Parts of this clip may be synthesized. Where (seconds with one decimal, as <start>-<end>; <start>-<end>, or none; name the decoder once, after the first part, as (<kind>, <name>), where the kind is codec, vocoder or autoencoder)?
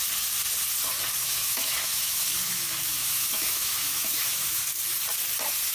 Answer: 1.2-4.6 (autoencoder, DAC-VAE)